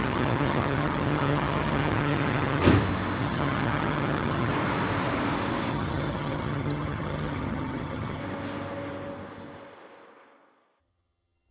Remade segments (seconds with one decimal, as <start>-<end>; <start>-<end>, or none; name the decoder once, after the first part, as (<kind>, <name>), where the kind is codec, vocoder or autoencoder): 0.0-2.6 (vocoder, HiFi-GAN); 3.2-4.5; 5.7-8.2; 10.8-11.5